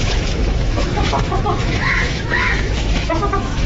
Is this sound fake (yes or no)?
yes